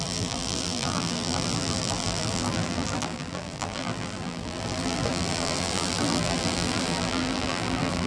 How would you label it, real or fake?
fake